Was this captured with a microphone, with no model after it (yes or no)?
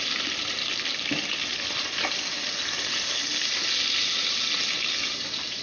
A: yes